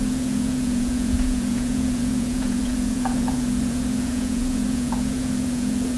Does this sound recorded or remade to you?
remade